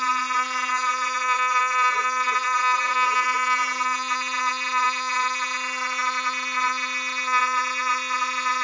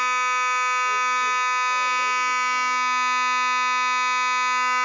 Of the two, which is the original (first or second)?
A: second